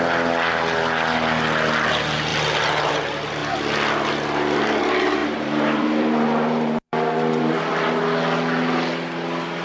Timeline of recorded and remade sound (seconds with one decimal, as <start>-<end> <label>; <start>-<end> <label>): 0.0-5.2 recorded; 5.2-7.7 remade; 7.7-9.6 recorded